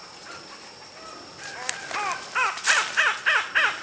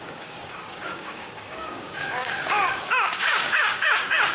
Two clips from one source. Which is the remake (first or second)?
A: second